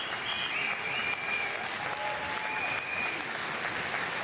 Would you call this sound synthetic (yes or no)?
no